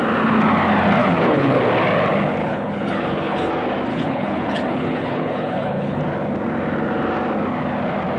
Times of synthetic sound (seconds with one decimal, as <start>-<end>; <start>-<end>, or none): 1.0-1.6; 2.4-3.5; 3.9-6.0